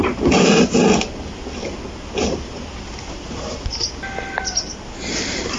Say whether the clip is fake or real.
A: real